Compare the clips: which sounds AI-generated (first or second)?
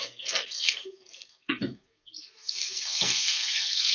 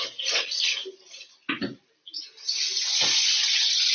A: first